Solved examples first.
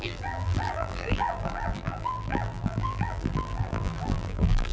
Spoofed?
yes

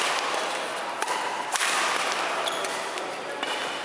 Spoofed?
no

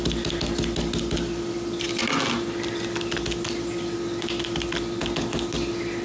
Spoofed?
no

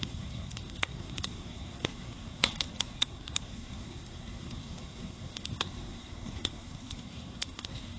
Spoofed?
yes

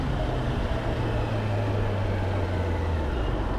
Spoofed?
no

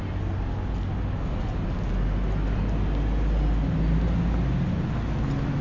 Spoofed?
no